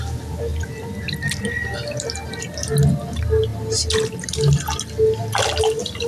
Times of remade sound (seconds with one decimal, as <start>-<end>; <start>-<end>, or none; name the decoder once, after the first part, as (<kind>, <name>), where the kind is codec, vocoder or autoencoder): none